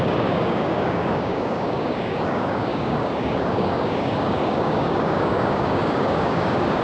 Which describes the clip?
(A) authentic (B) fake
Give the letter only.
B